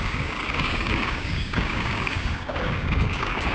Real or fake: fake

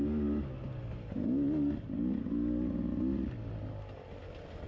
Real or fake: real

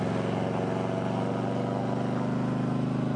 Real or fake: real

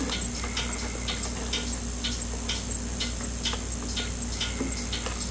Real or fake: real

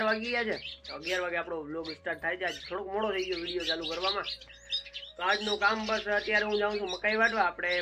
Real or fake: real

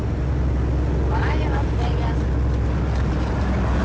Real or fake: real